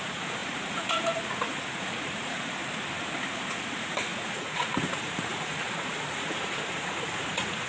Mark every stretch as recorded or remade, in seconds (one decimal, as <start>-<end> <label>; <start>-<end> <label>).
0.0-2.6 remade; 2.6-3.2 recorded; 3.2-7.7 remade